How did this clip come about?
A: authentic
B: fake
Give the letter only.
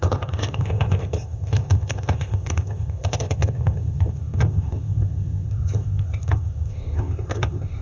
B